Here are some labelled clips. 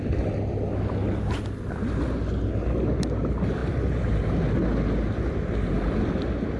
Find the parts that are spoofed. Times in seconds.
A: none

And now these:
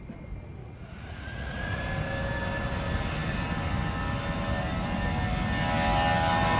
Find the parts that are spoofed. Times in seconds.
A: 0.6-1.8 (vocoder, Vocos)